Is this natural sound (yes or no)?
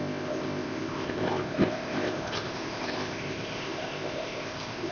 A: no